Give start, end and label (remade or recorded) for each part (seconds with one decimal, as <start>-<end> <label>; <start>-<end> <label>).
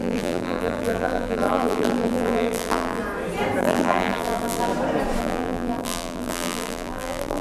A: 0.0-3.0 remade; 3.0-3.6 recorded; 3.6-4.7 remade; 4.7-5.2 recorded; 5.2-7.4 remade